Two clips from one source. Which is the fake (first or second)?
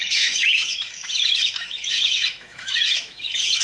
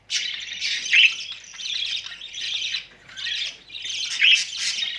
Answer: first